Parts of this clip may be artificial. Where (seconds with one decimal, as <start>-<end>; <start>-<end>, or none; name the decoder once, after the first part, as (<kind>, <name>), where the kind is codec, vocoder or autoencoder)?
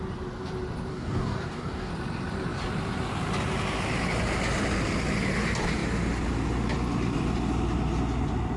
0.9-1.9 (codec, DAC)